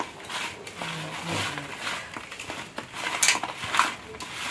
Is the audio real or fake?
real